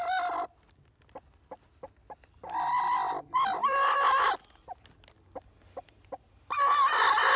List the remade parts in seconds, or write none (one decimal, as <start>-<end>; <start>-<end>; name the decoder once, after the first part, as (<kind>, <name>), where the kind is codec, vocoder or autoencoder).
none